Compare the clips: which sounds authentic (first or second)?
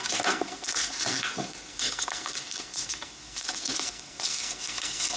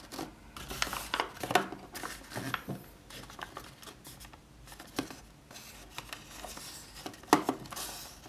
second